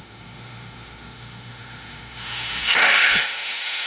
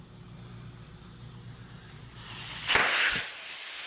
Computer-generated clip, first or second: first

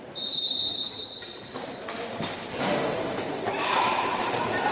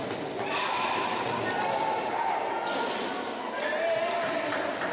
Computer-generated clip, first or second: first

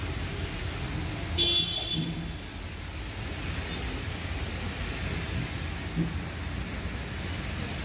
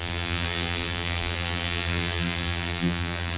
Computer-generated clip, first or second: second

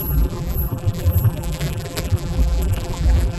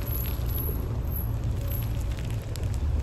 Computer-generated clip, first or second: first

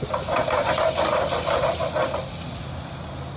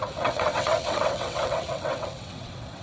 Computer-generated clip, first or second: second